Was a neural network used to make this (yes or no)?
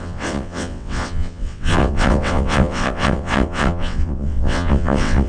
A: yes